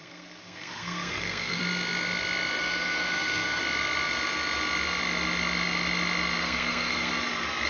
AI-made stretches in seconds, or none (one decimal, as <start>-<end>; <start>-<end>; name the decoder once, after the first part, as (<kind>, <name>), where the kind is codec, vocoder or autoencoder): 0.0-1.6 (codec, SNAC); 2.6-3.6; 6.4-7.1